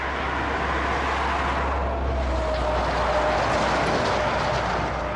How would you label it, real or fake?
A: real